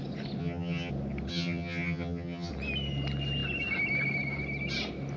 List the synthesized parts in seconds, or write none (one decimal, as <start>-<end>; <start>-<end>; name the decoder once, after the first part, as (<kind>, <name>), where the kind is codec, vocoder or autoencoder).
0.4-0.9 (vocoder, HiFi-GAN); 1.3-2.5